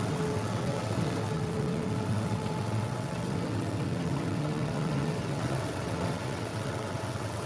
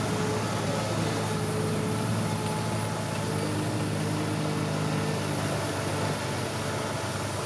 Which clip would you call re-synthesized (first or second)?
first